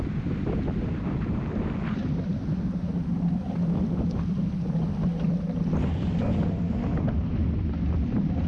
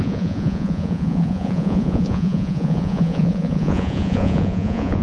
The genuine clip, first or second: first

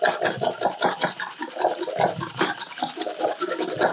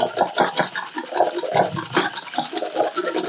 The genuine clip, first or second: second